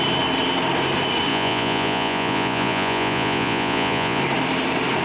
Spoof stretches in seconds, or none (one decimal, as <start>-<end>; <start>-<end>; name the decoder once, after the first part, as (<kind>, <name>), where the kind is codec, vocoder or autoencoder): 1.3-4.2 (vocoder, Vocos)